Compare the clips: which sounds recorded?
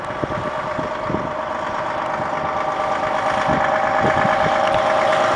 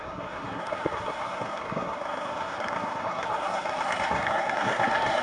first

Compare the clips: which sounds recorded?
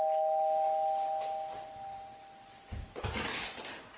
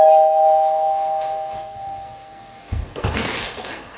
first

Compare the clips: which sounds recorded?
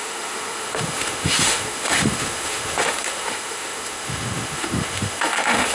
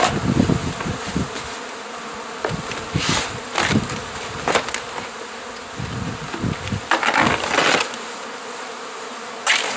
second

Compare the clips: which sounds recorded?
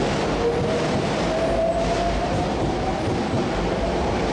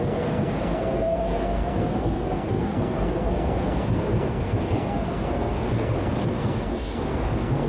first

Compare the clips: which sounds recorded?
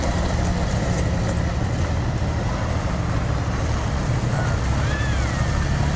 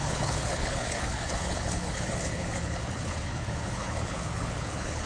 first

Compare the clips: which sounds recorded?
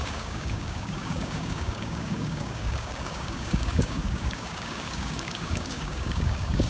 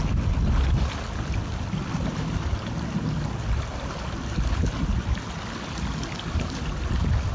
second